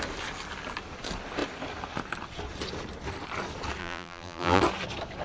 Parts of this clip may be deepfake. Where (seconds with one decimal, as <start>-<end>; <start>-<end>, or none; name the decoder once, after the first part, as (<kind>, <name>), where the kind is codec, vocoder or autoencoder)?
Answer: 3.8-4.6 (vocoder, BigVGAN v2)